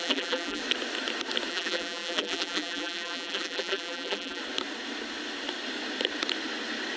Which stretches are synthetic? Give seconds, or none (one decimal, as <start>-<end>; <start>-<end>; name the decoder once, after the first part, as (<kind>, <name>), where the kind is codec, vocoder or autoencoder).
0.0-0.6 (vocoder, BigVGAN v2); 1.5-4.4